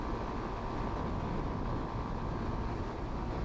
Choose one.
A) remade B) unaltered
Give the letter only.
B